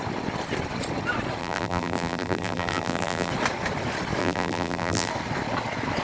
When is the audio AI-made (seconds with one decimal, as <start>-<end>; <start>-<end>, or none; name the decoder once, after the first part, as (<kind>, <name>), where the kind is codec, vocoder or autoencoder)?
1.4-3.3 (vocoder, BigVGAN v2); 4.2-5.1